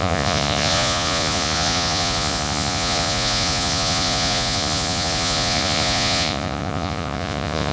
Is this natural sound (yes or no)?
no